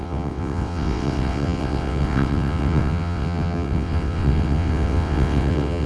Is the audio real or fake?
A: fake